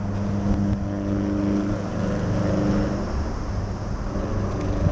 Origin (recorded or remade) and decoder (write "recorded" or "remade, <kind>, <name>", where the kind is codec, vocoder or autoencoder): recorded